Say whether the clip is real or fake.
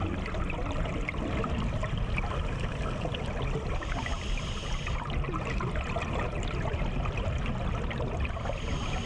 real